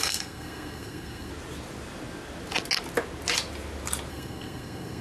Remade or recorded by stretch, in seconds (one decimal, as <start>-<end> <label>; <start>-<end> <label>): 0.0-1.3 remade; 1.3-4.1 recorded; 4.1-5.0 remade